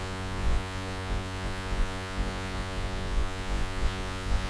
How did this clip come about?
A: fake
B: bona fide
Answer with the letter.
A